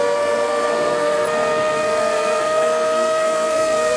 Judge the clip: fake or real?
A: fake